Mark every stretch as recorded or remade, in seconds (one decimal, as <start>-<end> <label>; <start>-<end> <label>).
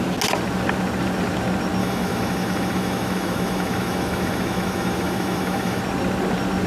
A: 0.0-1.8 recorded; 1.8-5.8 remade; 5.8-6.7 recorded